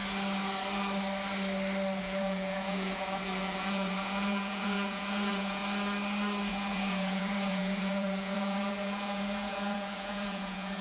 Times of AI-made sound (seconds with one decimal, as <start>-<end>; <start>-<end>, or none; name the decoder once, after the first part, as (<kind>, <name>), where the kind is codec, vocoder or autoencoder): 2.0-5.6 (vocoder, Vocos); 6.5-10.8